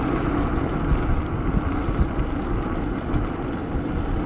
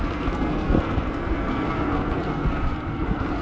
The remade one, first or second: second